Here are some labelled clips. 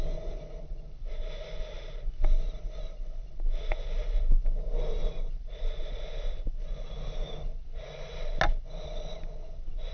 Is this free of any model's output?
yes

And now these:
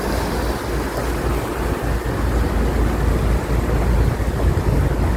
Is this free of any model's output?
yes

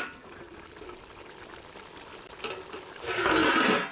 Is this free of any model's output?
yes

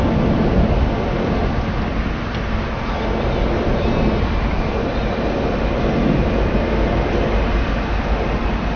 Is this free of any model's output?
yes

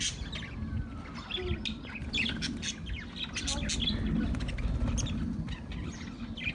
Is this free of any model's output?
yes